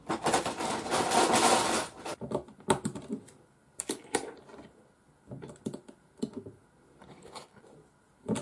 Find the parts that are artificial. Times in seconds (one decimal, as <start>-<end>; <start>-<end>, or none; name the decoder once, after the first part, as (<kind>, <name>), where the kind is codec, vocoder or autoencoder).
7.0-7.6 (codec, HILCodec)